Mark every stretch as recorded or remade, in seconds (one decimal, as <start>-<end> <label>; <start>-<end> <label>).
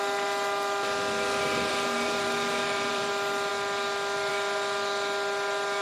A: 0.0-1.7 recorded; 1.7-3.1 remade; 3.1-5.8 recorded